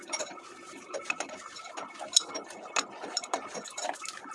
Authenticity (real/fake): real